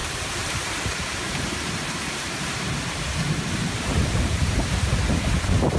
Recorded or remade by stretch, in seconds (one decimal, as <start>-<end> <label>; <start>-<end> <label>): 0.0-2.3 remade; 2.3-3.6 recorded; 3.6-5.3 remade; 5.3-5.8 recorded